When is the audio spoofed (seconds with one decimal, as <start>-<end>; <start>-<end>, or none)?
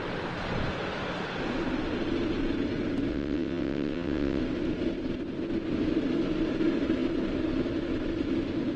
3.1-4.4